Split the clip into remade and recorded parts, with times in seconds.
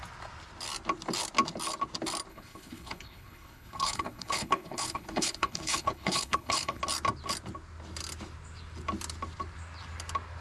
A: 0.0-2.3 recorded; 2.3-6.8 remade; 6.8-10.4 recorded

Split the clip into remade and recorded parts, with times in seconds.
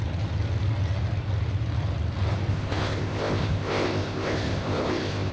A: 0.0-2.5 recorded; 2.5-5.3 remade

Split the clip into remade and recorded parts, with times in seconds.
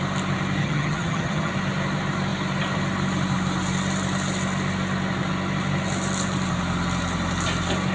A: 0.0-0.6 recorded; 0.6-1.5 remade; 1.5-7.9 recorded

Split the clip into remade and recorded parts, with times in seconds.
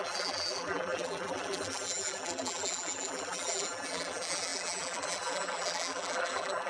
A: 0.0-6.7 remade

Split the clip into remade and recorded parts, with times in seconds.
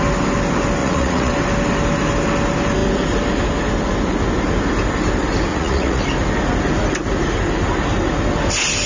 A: 0.0-0.8 recorded; 0.8-1.3 remade; 1.3-5.5 recorded; 5.5-6.0 remade; 6.0-8.9 recorded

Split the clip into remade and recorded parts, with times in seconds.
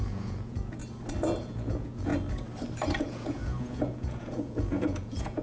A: 0.0-0.8 remade; 0.8-1.4 recorded; 1.4-2.1 remade; 2.1-3.0 recorded; 3.0-5.4 remade